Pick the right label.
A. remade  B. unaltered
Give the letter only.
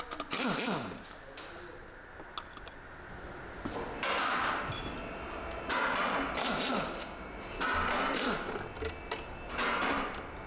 B